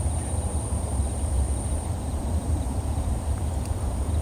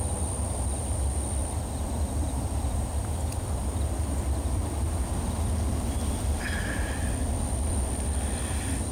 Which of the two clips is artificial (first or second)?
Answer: first